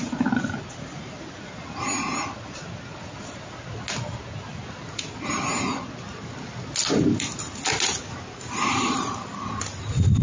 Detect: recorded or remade recorded